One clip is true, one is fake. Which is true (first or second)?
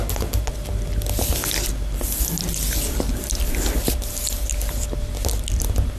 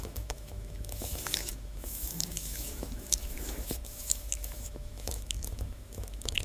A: first